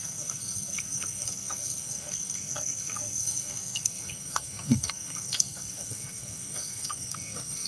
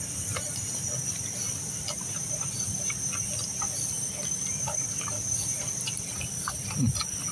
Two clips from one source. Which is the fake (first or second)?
first